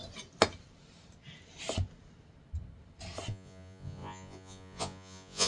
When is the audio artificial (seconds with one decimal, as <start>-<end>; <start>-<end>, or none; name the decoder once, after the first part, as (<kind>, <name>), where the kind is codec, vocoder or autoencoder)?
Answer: 3.3-5.5 (vocoder, Vocos)